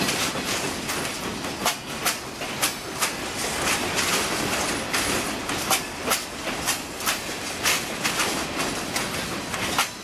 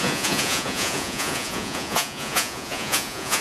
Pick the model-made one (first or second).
second